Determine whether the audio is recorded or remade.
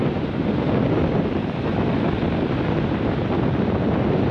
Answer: recorded